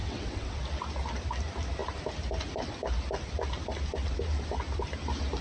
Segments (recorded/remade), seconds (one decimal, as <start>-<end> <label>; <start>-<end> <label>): 0.0-0.6 remade; 0.6-5.4 recorded